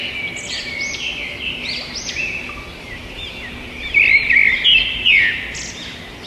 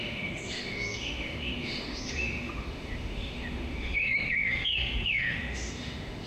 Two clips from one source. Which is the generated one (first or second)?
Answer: second